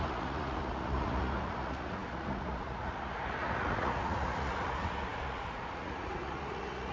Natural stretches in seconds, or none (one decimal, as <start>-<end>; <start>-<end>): none